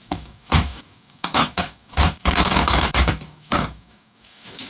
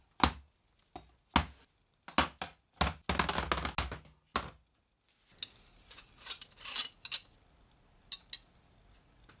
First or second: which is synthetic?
first